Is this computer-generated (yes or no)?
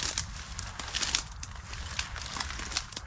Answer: no